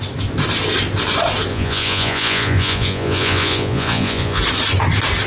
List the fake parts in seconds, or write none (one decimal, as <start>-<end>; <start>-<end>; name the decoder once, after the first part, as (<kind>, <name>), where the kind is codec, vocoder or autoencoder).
1.5-4.4 (vocoder, Vocos)